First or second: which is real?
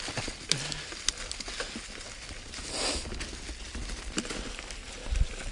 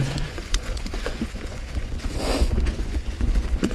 first